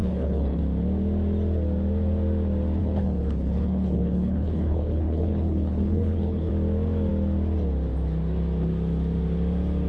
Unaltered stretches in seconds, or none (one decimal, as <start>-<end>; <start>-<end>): 0.6-2.8; 6.5-9.9